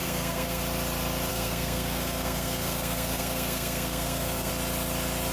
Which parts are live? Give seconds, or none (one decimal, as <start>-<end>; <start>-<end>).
0.6-1.3; 4.5-5.3